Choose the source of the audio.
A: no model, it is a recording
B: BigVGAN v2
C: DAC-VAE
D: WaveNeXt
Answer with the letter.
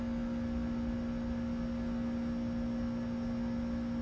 A